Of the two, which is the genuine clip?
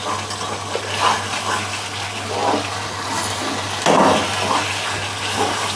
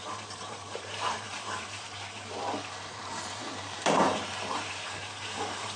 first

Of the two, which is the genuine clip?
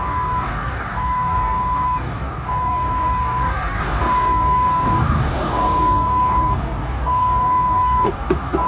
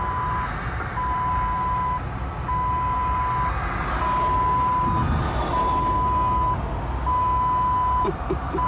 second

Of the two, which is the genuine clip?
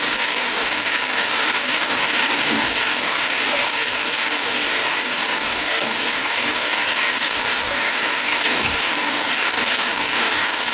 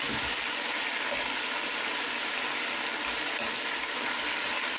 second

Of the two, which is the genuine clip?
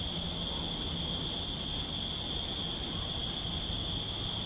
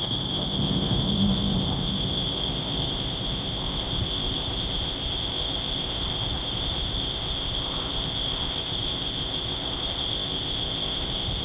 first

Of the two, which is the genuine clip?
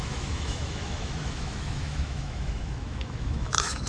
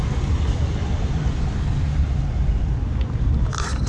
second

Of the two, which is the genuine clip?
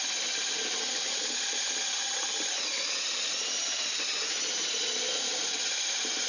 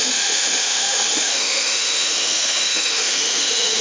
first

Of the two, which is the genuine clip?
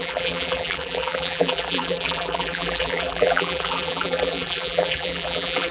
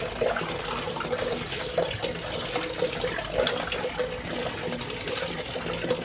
second